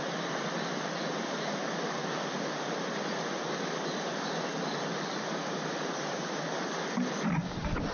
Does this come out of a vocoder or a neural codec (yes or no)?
no